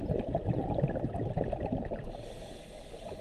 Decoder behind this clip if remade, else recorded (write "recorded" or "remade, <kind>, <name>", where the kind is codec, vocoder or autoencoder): recorded